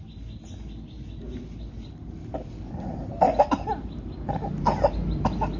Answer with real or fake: real